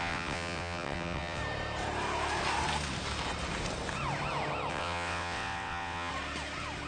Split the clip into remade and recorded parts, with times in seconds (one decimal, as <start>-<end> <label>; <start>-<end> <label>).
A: 0.0-1.4 remade; 1.4-4.7 recorded; 4.7-6.1 remade; 6.1-6.9 recorded